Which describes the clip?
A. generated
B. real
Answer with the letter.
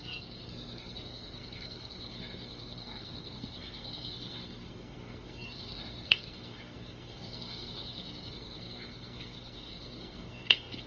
A